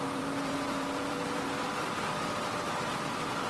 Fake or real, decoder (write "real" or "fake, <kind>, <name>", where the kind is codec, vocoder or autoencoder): fake, vocoder, BigVGAN v2